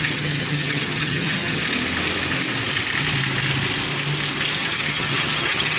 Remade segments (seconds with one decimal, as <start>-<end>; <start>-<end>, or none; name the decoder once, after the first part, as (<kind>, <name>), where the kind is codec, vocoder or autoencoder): 0.0-1.6 (vocoder, HiFi-GAN); 4.6-5.8